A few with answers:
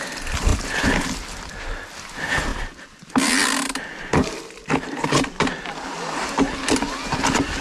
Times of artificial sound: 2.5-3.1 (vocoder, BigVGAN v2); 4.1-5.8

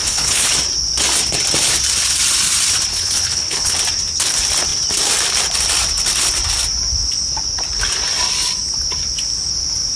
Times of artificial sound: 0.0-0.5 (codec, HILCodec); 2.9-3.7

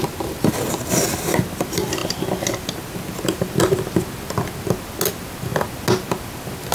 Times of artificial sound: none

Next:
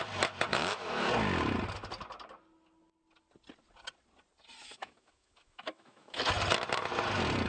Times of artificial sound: 0.5-1.1 (autoencoder, DAC-VAE); 4.6-6.2

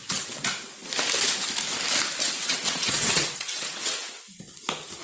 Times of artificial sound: 2.2-4.2 (vocoder, WaveNeXt)

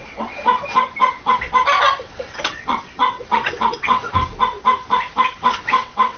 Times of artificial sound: 0.0-0.5 (vocoder, WaveNeXt); 1.1-1.5; 2.0-4.2; 5.3-6.2